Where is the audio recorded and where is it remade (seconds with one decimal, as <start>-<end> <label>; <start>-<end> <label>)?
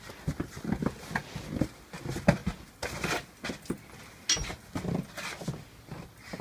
0.0-6.4 recorded